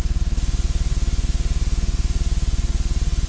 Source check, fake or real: real